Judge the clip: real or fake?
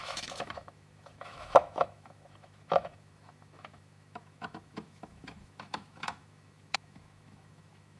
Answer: fake